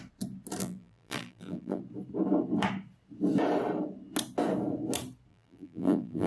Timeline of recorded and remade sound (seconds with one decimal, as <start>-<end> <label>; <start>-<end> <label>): 0.0-0.6 recorded; 0.6-1.8 remade; 1.8-5.3 recorded; 5.3-6.3 remade